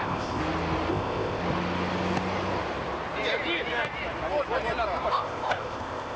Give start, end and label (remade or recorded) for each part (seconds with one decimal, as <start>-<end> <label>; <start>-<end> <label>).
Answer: 0.0-0.4 remade; 0.4-0.9 recorded; 0.9-1.4 remade; 1.4-5.1 recorded; 5.1-6.2 remade